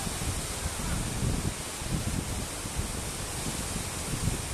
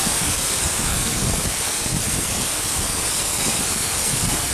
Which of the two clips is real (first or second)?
first